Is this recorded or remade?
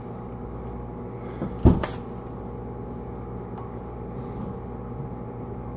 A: recorded